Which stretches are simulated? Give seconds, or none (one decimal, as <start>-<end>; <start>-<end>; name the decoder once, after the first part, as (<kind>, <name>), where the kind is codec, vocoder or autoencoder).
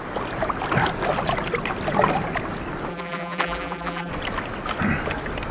2.9-4.1 (vocoder, BigVGAN v2)